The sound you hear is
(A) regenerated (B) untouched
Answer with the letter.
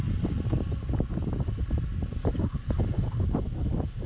B